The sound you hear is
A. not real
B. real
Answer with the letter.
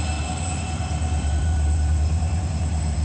A